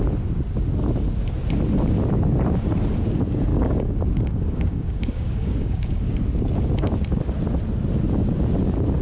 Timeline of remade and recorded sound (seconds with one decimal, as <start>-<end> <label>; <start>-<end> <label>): 0.0-3.5 recorded; 3.5-6.1 remade; 6.1-9.0 recorded